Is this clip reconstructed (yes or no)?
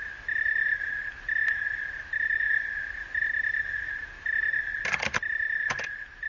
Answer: no